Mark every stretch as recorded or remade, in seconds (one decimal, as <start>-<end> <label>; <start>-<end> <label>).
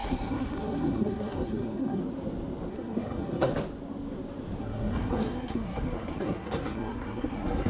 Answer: 0.0-2.0 remade; 2.0-2.7 recorded; 2.7-3.5 remade; 3.5-4.6 recorded; 4.6-7.7 remade